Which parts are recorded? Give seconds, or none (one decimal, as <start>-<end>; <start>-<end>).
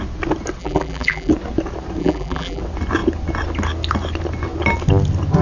0.0-0.6; 1.3-2.0; 2.6-5.4